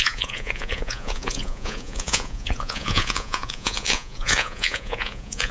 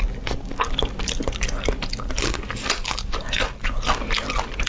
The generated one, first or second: first